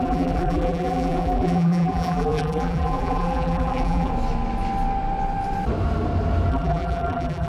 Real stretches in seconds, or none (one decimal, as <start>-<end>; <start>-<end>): 4.1-6.5